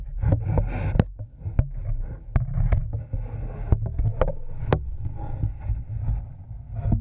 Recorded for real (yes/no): yes